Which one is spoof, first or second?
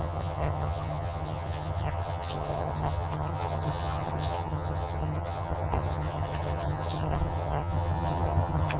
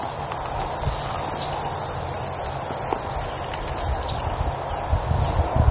first